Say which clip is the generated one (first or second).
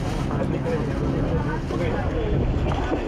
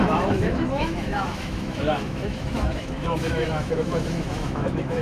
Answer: second